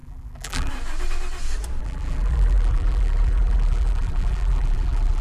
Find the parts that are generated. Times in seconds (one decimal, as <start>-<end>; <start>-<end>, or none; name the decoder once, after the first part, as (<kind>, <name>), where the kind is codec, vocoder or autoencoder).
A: 0.0-0.7 (vocoder, BigVGAN v2); 1.8-5.2